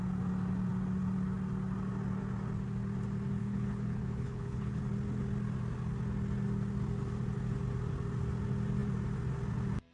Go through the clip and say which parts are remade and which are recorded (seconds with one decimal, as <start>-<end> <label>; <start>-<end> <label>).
0.0-3.4 recorded; 3.4-4.8 remade; 4.8-9.9 recorded